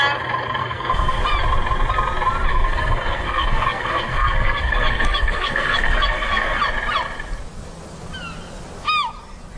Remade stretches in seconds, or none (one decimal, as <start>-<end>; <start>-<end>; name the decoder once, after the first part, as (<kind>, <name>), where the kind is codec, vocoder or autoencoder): 0.6-1.2 (codec, SNAC); 2.5-6.6